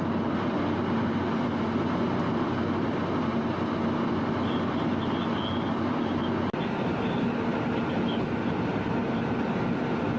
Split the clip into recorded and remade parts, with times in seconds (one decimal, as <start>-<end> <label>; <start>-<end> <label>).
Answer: 0.0-10.2 recorded